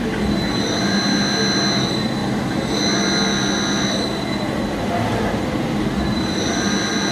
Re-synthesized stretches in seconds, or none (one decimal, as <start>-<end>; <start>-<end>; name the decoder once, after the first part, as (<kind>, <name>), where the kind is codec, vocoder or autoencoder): 2.2-2.7 (vocoder, BigVGAN v2)